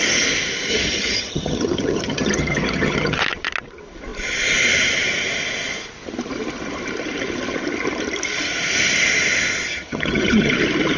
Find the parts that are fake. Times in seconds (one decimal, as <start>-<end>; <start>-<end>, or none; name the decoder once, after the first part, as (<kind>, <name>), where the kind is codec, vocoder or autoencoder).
0.7-3.2 (vocoder, HiFi-GAN); 9.7-10.5